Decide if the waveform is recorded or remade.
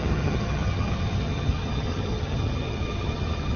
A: remade